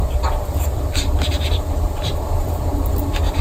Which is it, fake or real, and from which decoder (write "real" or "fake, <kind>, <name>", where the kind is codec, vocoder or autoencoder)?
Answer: fake, vocoder, BigVGAN v2